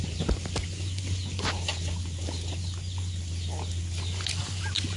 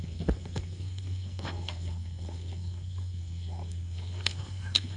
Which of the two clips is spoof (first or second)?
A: second